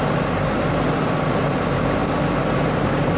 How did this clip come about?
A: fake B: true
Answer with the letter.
B